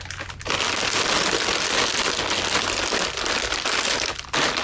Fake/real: real